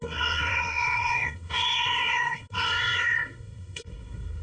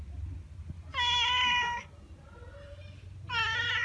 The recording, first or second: second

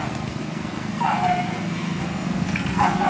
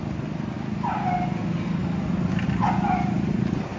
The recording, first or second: second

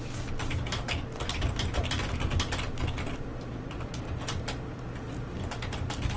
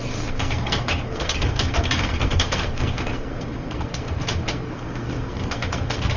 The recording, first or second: first